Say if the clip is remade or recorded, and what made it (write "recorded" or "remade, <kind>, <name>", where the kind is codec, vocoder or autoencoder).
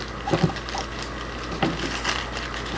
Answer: recorded